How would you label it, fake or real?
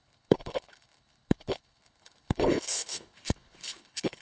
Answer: fake